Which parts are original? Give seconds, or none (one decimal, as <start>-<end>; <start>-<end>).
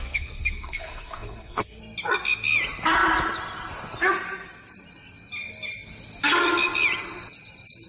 1.8-7.9